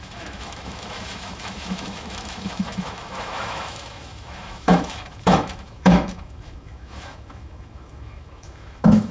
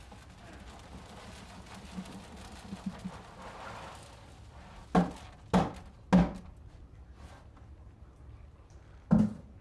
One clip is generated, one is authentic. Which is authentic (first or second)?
second